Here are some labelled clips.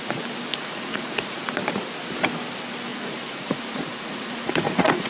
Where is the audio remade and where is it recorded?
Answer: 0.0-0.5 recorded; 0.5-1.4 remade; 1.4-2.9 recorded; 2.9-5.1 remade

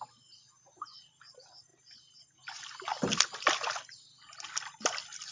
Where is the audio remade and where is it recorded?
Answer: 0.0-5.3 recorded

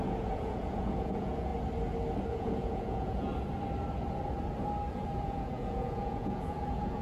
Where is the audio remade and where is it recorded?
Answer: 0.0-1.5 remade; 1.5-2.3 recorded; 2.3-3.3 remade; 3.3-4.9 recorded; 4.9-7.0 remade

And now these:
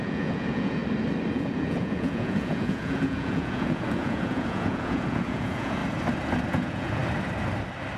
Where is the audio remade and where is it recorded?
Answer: 0.0-0.8 remade; 0.8-1.3 recorded; 1.3-5.8 remade; 5.8-6.4 recorded; 6.4-7.0 remade; 7.0-8.0 recorded

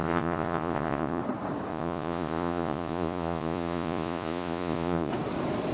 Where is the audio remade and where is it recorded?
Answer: 0.0-1.2 remade; 1.2-1.7 recorded; 1.7-5.1 remade; 5.1-5.7 recorded